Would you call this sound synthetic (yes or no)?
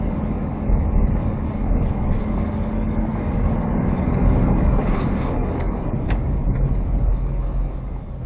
yes